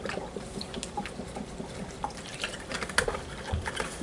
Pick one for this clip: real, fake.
real